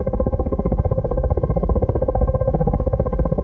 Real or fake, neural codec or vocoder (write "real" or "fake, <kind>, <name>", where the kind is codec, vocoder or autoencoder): fake, codec, SNAC